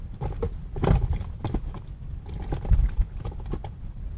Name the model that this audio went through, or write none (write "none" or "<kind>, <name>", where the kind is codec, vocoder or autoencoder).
none